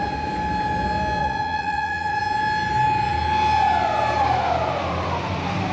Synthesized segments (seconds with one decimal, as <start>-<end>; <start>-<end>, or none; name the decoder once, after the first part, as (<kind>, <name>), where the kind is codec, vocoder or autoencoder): 1.2-2.2 (vocoder, Vocos)